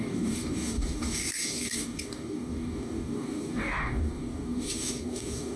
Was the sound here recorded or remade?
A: remade